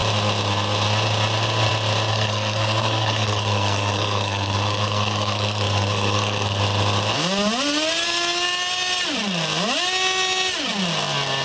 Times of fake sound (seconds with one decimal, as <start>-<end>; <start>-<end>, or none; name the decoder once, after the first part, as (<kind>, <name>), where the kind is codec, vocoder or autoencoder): 2.1-6.6 (codec, SNAC)